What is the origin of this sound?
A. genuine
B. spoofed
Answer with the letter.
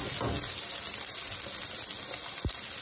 A